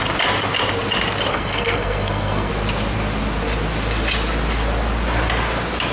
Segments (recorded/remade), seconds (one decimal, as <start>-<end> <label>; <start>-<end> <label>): 0.0-1.3 recorded; 1.3-2.5 remade; 2.5-5.9 recorded